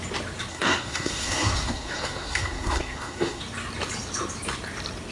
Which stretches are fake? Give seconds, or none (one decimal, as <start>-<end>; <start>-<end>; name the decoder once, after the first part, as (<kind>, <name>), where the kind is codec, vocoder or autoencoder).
0.5-3.4 (codec, SNAC)